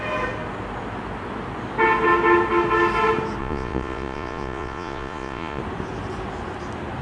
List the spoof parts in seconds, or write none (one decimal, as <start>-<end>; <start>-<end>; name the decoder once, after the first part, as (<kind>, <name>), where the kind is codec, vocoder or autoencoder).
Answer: 3.4-5.6 (vocoder, Vocos)